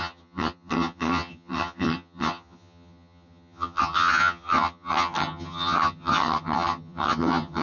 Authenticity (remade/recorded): remade